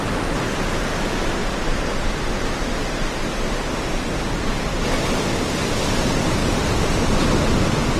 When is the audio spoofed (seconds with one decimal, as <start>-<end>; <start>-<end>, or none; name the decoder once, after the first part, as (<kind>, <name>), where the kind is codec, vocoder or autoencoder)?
1.4-4.7 (vocoder, BigVGAN v2); 6.4-7.6

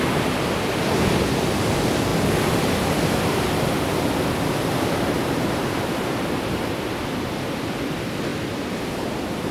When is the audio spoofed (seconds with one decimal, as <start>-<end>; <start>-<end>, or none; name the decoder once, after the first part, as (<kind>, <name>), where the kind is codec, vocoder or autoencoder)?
none